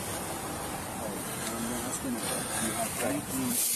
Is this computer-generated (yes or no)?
no